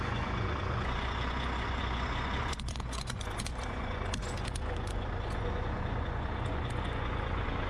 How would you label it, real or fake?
fake